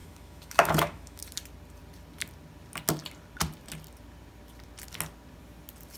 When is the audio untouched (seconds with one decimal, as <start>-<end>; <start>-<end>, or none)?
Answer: 1.2-6.0